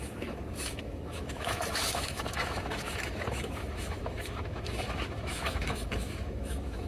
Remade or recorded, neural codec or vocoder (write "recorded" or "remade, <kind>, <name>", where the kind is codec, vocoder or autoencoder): remade, autoencoder, DAC-VAE